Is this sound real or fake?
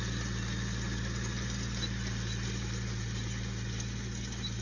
real